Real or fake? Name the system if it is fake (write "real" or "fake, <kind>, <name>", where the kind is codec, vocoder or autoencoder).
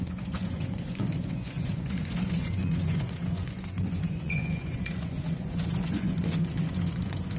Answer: fake, vocoder, Vocos